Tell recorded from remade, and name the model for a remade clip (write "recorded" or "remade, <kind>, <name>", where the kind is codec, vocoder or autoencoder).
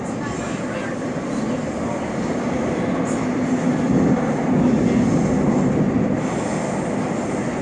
recorded